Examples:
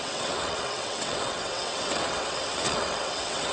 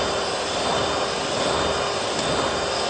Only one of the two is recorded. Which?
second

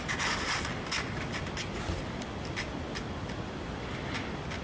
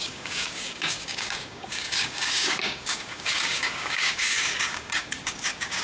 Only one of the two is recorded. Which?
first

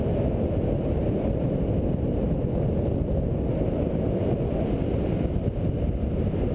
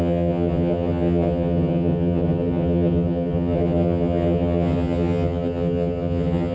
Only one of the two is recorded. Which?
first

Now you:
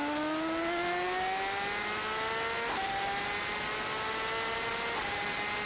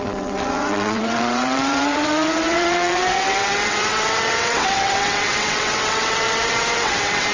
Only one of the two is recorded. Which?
first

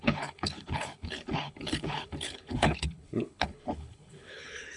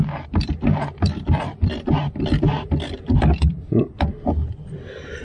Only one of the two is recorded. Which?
second